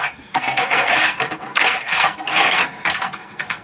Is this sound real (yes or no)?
no